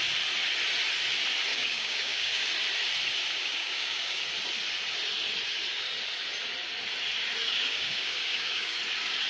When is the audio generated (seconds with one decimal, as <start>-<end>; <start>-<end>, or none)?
1.5-2.5; 3.4-4.2; 7.4-8.8